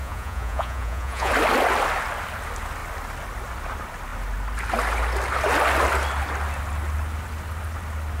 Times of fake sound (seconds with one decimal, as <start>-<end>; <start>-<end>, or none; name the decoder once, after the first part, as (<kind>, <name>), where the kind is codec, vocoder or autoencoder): 0.0-1.3 (vocoder, Vocos)